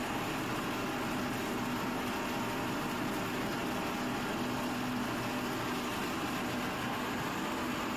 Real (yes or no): yes